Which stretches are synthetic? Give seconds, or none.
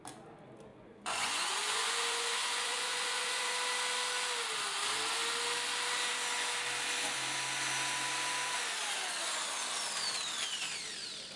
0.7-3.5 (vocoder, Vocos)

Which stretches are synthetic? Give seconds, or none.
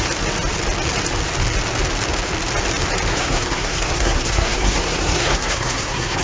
3.1-6.2 (codec, SNAC)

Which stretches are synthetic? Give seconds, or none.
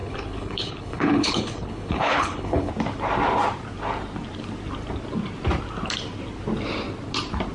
0.0-2.7 (codec, HILCodec)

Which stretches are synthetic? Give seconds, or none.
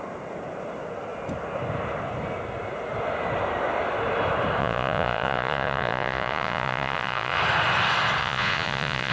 4.6-7.4 (vocoder, Vocos); 8.2-9.1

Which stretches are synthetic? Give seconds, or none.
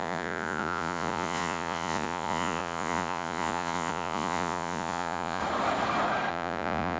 0.0-5.4 (vocoder, Vocos); 6.3-7.0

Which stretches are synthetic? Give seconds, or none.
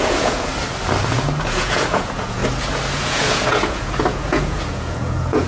0.0-0.5 (vocoder, Vocos); 1.1-2.4; 2.9-5.5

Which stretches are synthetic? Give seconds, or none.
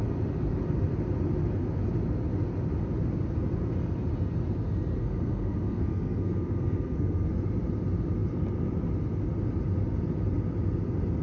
5.0-7.3 (codec, SNAC)